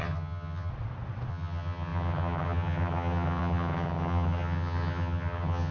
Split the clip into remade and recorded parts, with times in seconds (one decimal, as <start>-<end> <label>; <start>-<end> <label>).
0.0-0.7 remade; 0.7-1.3 recorded; 1.3-5.7 remade